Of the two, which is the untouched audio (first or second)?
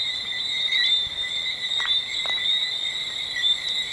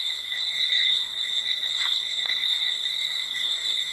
first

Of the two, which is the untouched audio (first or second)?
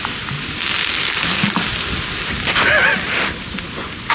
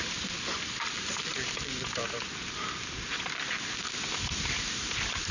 first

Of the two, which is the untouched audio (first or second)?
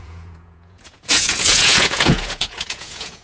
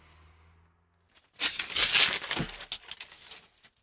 second